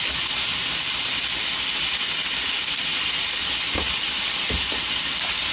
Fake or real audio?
real